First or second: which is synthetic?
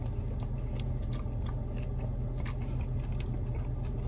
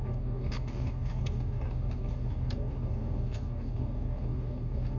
second